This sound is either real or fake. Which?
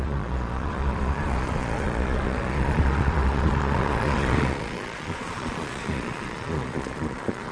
fake